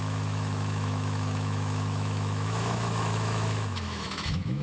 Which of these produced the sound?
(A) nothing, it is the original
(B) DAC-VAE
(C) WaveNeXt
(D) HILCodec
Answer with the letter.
B